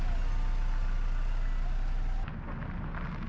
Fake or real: real